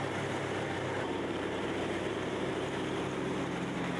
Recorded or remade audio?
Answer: remade